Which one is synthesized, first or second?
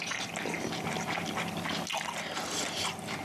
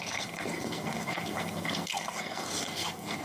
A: second